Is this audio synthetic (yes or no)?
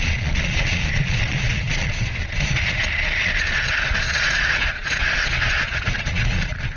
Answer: yes